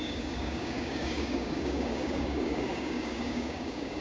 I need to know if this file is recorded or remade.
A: remade